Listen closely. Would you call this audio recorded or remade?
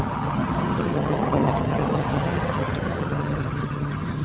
remade